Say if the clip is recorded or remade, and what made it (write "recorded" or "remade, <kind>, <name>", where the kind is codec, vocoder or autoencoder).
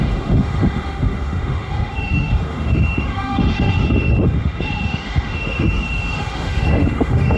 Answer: remade, autoencoder, DAC-VAE